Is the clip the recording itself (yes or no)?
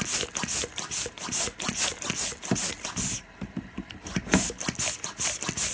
yes